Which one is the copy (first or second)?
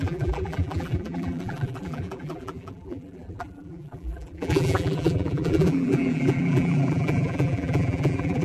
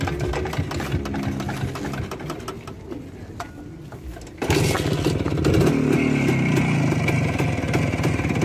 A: first